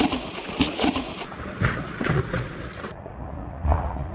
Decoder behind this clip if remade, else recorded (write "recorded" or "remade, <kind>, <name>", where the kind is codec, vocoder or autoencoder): remade, vocoder, Vocos